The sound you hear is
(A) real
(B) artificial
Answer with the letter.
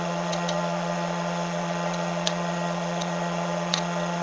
B